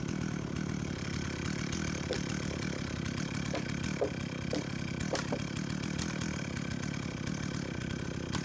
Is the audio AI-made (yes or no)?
no